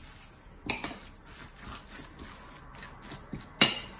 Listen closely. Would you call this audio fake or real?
real